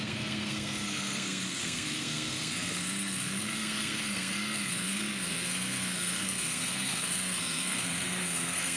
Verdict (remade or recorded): remade